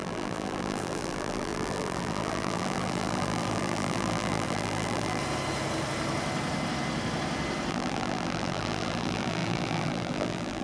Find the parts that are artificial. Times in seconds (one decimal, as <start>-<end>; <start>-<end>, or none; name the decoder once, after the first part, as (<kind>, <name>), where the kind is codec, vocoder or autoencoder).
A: 0.0-5.2 (vocoder, BigVGAN v2); 7.7-10.6